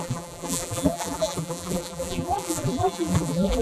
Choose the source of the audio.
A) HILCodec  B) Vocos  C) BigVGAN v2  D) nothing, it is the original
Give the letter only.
C